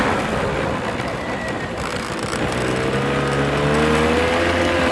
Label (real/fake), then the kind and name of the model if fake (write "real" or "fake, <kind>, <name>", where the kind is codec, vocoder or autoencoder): real